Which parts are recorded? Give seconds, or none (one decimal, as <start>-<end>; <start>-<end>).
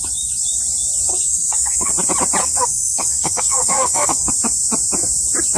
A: 0.0-1.1; 1.9-2.4; 4.3-5.6